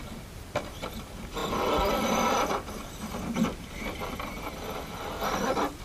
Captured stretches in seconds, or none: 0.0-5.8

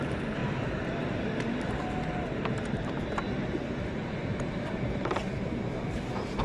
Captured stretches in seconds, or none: none